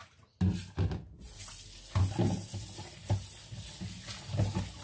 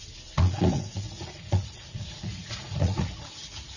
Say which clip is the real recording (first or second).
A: first